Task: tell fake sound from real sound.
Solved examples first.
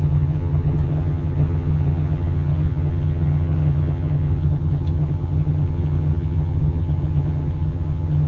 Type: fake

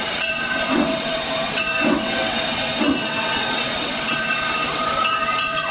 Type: fake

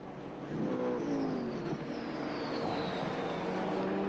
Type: real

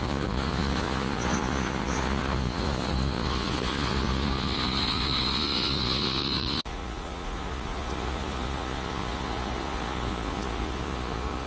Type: fake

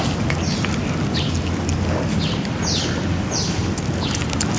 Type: real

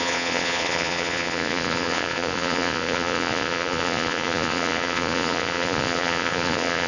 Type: fake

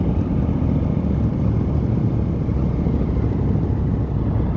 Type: real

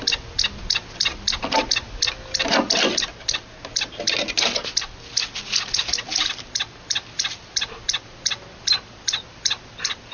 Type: real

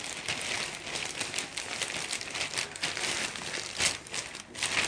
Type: real